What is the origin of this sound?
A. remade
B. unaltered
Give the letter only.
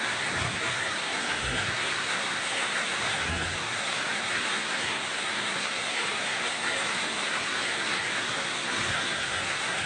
A